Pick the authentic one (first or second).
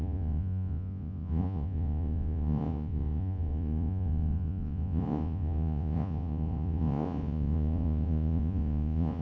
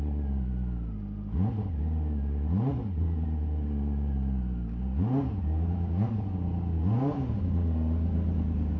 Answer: second